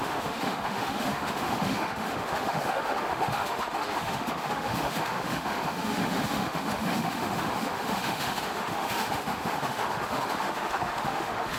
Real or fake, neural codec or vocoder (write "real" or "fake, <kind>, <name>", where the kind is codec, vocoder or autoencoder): fake, autoencoder, DAC-VAE